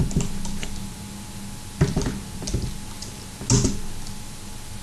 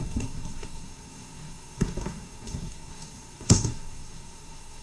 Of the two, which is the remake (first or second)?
second